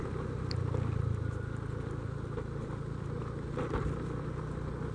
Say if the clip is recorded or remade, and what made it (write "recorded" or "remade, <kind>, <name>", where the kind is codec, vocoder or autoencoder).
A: recorded